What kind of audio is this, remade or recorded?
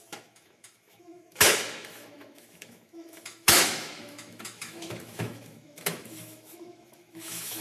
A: remade